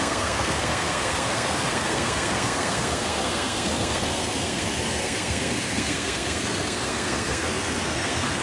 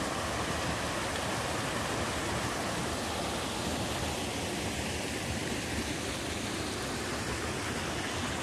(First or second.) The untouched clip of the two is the second